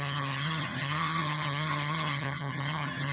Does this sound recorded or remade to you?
remade